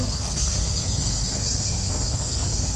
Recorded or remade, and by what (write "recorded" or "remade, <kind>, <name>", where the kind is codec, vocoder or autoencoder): remade, codec, SNAC